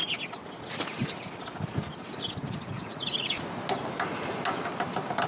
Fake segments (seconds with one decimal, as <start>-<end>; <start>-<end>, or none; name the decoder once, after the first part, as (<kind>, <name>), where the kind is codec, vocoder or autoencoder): 2.4-3.3 (vocoder, Vocos)